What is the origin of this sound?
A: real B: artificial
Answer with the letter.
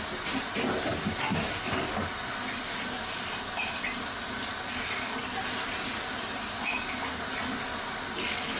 A